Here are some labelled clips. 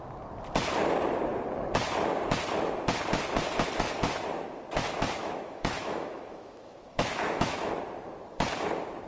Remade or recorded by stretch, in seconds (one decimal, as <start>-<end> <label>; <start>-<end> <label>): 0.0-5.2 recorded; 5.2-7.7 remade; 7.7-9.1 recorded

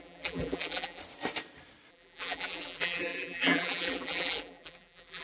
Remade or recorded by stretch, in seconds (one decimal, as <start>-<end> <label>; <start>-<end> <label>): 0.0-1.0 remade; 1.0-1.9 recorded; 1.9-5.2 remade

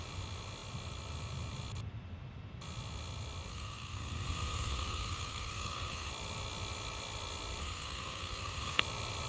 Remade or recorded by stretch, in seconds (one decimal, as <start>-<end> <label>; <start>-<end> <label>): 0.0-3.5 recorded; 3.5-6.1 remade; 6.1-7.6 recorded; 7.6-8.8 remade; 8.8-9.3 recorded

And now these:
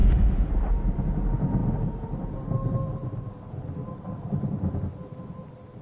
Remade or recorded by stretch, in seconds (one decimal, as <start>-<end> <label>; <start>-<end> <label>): 0.0-0.5 remade; 0.5-5.8 recorded

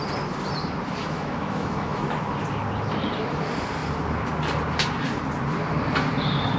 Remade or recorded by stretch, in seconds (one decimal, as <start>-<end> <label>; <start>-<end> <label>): 0.0-1.0 recorded; 1.0-2.1 remade; 2.1-6.6 recorded

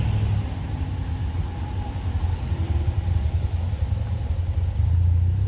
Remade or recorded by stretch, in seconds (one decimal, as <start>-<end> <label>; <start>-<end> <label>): 0.0-1.0 recorded; 1.0-3.1 remade; 3.1-5.5 recorded